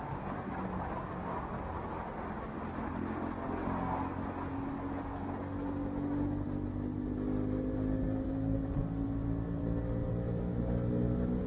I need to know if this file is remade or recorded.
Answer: recorded